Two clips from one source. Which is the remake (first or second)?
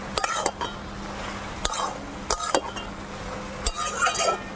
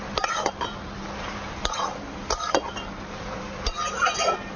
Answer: second